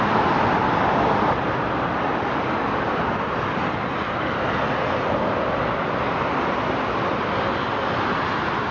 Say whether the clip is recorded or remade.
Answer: recorded